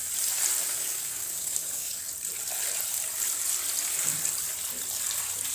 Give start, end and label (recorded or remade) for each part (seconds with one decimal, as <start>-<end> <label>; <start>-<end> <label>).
0.0-0.6 recorded; 0.6-2.0 remade; 2.0-5.5 recorded